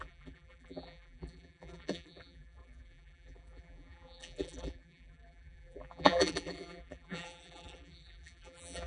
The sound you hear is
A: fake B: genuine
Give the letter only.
A